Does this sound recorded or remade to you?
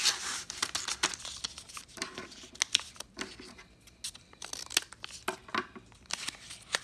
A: recorded